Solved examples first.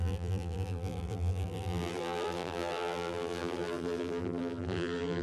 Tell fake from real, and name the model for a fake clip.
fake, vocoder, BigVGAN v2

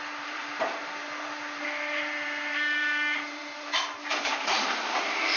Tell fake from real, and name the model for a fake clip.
fake, vocoder, BigVGAN v2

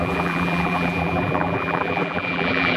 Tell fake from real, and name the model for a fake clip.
fake, vocoder, BigVGAN v2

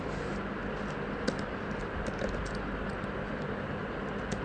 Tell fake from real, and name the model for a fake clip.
real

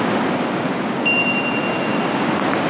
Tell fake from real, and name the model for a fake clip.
real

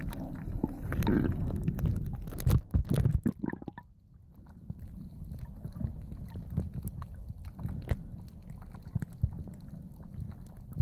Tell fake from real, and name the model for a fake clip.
real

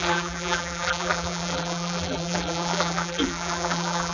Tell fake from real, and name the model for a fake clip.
fake, vocoder, BigVGAN v2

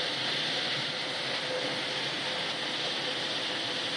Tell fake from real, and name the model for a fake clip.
real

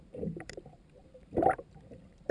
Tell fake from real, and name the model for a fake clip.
fake, vocoder, BigVGAN v2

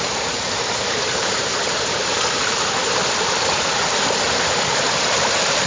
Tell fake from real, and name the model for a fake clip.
fake, vocoder, BigVGAN v2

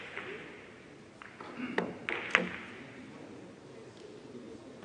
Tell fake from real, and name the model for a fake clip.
real